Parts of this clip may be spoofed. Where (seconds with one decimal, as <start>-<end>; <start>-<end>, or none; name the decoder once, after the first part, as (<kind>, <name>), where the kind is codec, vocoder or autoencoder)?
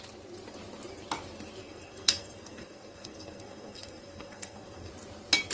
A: 1.6-4.9 (codec, SNAC)